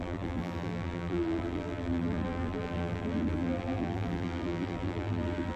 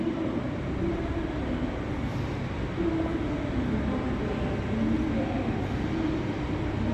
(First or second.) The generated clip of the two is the first